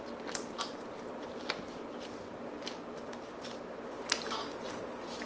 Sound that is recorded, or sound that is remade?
recorded